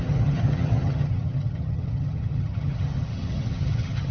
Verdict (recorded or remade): remade